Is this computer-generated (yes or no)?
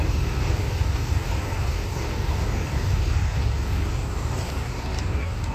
yes